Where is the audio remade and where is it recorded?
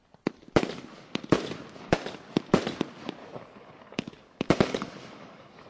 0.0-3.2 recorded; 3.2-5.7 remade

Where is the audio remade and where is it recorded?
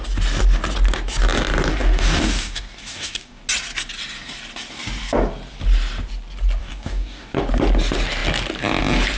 0.0-1.7 recorded; 1.7-3.4 remade; 3.4-6.6 recorded; 6.6-7.4 remade; 7.4-9.2 recorded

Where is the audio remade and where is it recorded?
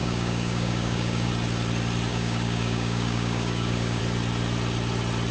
0.0-1.3 remade; 1.3-2.1 recorded; 2.1-4.0 remade; 4.0-5.3 recorded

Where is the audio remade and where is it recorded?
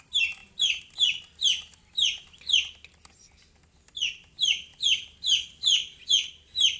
0.0-6.8 recorded